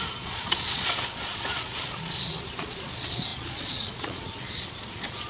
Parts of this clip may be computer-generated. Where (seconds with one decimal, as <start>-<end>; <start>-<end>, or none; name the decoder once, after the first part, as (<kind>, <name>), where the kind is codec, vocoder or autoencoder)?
0.0-5.3 (vocoder, Vocos)

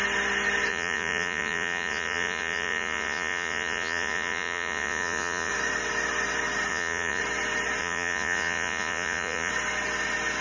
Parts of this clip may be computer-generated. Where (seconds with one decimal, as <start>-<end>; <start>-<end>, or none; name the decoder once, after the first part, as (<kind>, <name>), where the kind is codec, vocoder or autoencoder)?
0.7-5.5 (vocoder, Vocos); 6.7-7.2; 7.8-9.5

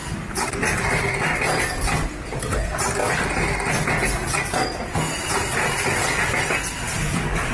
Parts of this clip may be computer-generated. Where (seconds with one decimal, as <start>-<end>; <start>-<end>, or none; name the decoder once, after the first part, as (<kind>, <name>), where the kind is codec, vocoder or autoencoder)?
2.6-3.0 (vocoder, BigVGAN v2); 6.7-7.5

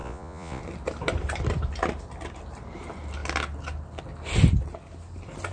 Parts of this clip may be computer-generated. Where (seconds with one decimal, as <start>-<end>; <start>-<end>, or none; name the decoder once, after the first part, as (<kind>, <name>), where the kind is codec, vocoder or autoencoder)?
0.0-0.6 (vocoder, Vocos)